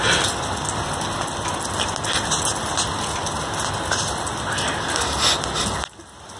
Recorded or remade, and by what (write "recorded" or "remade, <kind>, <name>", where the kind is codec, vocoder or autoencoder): recorded